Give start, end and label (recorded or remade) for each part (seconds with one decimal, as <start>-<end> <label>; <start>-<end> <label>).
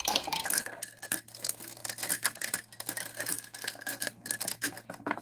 0.0-5.2 remade